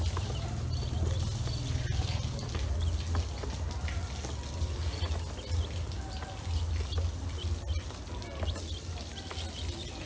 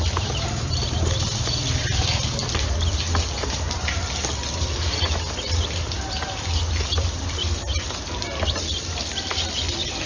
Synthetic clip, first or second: second